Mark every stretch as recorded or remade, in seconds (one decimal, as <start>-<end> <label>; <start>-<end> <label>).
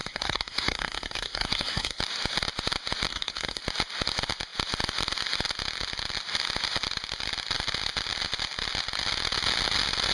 0.0-2.0 remade; 2.0-3.1 recorded; 3.1-3.6 remade; 3.6-10.1 recorded